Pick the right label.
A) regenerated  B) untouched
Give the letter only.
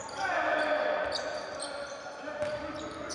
B